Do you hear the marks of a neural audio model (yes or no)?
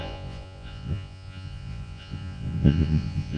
yes